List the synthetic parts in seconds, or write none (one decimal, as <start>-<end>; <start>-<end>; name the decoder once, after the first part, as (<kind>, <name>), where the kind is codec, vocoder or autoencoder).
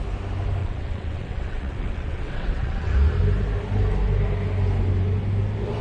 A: 0.6-2.9 (vocoder, WaveNeXt)